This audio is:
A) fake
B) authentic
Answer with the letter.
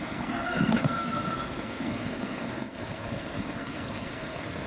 A